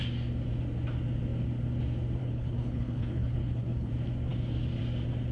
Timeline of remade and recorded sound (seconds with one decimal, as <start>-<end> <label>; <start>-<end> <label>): 0.0-2.2 recorded; 2.2-3.9 remade; 3.9-5.3 recorded